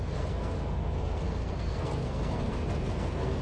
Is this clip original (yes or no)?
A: no